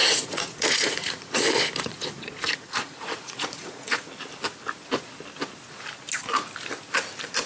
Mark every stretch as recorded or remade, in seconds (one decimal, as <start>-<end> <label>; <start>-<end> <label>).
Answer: 0.0-1.4 remade; 1.4-1.9 recorded; 1.9-4.1 remade; 4.1-7.5 recorded